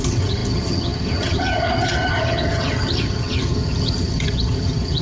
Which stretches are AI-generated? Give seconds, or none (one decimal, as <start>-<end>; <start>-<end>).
0.0-5.0